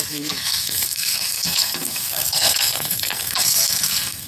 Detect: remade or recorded remade